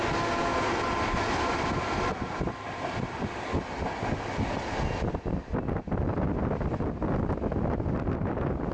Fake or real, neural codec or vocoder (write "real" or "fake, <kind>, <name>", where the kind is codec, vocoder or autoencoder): real